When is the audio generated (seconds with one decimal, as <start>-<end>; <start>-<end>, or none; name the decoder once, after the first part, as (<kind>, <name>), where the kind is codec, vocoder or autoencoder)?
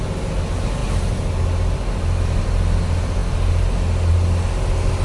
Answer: none